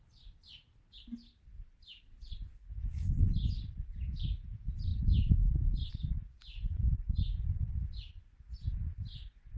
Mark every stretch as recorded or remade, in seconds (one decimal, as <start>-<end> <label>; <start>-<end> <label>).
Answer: 0.0-2.9 recorded; 2.9-4.1 remade; 4.1-6.5 recorded; 6.5-7.2 remade; 7.2-9.6 recorded